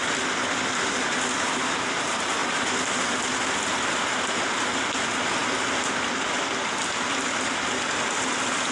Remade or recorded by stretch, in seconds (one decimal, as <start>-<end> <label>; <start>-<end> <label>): 0.0-2.4 recorded; 2.4-2.9 remade; 2.9-8.7 recorded